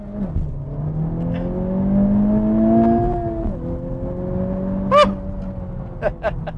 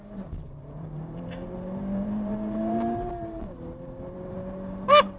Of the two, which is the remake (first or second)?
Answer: second